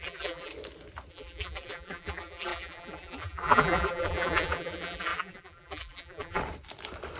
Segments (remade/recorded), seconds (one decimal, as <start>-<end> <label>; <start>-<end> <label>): 0.0-0.5 remade; 0.5-1.1 recorded; 1.1-6.4 remade; 6.4-7.2 recorded